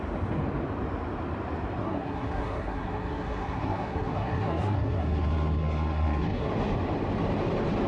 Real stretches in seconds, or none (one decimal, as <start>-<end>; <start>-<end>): 0.0-1.8; 6.5-7.9